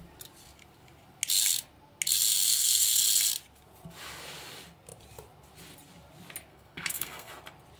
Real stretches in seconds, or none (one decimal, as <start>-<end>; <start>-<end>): 0.0-2.3; 3.0-6.5; 7.3-7.8